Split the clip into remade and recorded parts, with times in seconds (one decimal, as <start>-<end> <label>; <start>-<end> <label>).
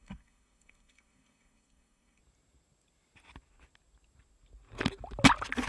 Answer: 0.0-2.2 remade; 2.2-5.7 recorded